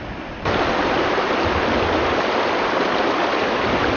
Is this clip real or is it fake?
real